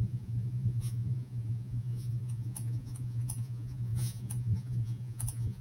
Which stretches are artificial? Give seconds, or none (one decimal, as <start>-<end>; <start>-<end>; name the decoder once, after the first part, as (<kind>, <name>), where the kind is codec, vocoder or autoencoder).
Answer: 0.0-5.6 (vocoder, Vocos)